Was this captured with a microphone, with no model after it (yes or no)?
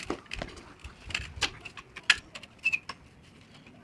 yes